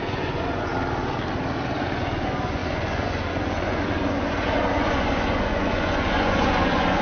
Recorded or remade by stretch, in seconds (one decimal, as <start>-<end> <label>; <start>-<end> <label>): 0.0-0.7 remade; 0.7-2.0 recorded; 2.0-7.0 remade